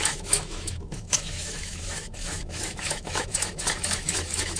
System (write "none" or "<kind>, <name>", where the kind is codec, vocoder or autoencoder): autoencoder, DAC-VAE